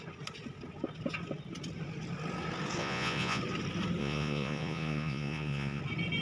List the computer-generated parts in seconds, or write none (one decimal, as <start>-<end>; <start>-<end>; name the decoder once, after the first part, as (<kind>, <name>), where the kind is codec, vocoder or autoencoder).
2.8-3.4 (vocoder, Vocos); 4.0-5.8